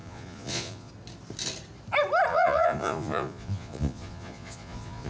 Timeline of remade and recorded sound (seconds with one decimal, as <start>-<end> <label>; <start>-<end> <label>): 0.0-0.9 remade; 0.9-2.3 recorded; 2.3-5.1 remade